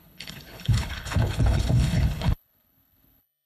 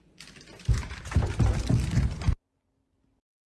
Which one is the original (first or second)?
second